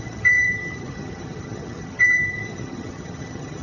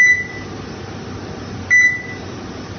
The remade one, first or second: first